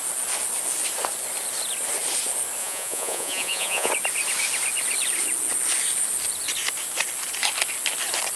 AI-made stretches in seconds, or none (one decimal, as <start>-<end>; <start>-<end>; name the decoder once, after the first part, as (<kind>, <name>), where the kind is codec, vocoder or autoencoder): 2.6-3.9 (vocoder, Vocos)